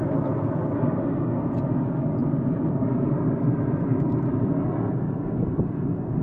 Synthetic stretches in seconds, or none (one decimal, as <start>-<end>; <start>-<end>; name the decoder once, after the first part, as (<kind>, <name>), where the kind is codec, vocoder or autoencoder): 2.2-4.6 (vocoder, BigVGAN v2)